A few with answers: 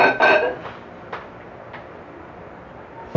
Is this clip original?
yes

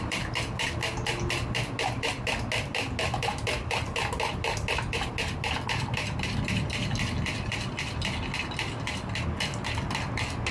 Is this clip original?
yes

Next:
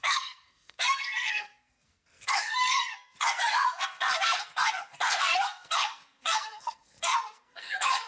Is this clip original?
no